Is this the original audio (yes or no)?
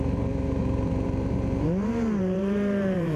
no